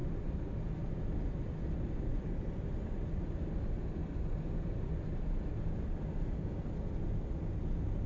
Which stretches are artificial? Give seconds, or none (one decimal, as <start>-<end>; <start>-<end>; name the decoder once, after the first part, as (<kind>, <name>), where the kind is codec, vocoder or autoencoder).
none